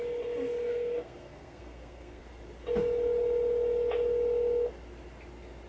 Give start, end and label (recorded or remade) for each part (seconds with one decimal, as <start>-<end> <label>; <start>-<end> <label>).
0.0-0.7 recorded; 0.7-2.2 remade; 2.2-5.7 recorded